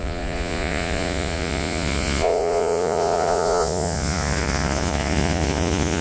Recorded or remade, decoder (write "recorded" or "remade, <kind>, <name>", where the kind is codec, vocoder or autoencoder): remade, vocoder, Vocos